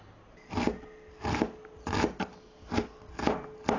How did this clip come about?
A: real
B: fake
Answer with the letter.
A